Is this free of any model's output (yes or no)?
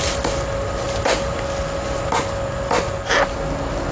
yes